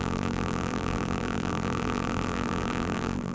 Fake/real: fake